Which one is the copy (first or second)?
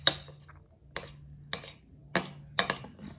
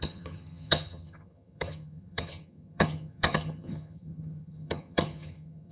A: second